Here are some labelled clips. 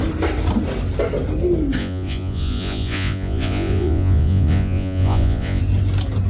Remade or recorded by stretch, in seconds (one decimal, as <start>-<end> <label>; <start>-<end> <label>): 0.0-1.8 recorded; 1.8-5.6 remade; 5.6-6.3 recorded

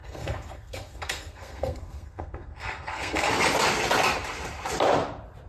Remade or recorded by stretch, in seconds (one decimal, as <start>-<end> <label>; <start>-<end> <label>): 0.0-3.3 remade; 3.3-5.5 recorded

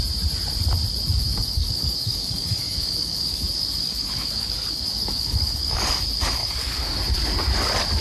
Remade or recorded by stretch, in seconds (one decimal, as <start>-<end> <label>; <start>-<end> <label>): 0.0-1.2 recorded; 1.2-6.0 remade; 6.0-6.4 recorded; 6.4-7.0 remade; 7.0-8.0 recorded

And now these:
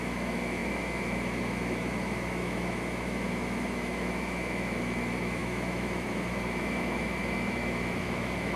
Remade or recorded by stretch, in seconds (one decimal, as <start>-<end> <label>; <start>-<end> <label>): 0.0-8.6 remade

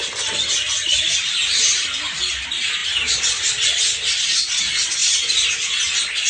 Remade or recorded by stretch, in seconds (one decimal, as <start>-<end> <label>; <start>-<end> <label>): 0.0-6.3 recorded